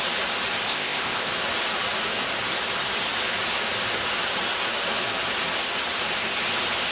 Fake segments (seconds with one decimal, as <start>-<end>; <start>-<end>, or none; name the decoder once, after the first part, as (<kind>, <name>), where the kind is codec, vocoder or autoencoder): 0.6-1.3 (codec, ZipCodec)